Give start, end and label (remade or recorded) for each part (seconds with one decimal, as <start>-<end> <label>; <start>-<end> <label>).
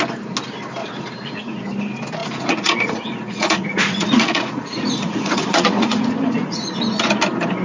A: 0.0-0.8 recorded; 0.8-1.6 remade; 1.6-2.2 recorded; 2.2-6.8 remade; 6.8-7.6 recorded